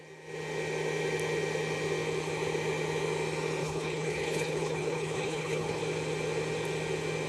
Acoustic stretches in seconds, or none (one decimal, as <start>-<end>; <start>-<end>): 0.0-3.6; 5.8-7.3